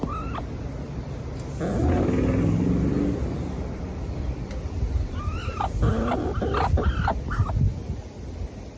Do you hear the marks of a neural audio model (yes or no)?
no